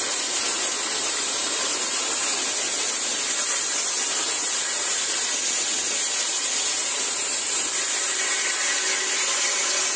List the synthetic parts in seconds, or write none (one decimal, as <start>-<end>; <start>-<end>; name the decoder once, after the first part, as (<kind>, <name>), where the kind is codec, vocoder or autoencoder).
none